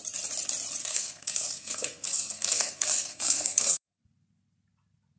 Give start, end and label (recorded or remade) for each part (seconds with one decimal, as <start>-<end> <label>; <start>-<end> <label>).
0.0-0.8 recorded; 0.8-3.9 remade; 3.9-5.2 recorded